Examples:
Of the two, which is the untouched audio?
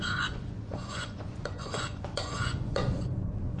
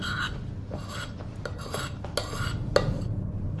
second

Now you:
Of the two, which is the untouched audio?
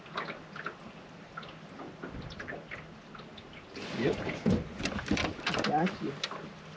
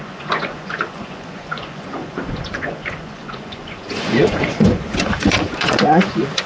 first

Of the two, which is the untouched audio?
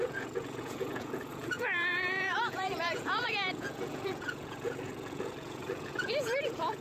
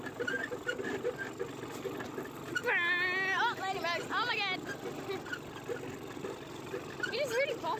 second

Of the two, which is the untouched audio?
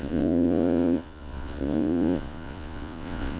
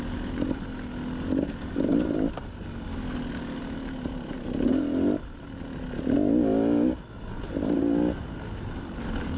second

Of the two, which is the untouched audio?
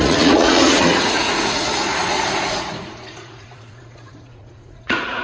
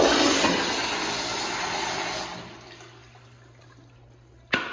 second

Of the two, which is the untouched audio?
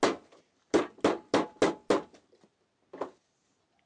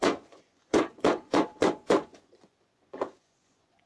first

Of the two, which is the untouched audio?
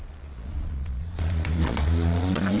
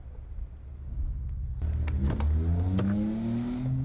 second